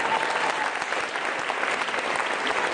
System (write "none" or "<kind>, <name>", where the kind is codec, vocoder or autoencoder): none